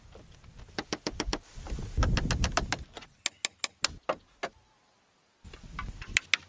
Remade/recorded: recorded